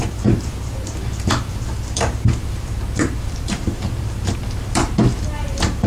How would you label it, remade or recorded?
remade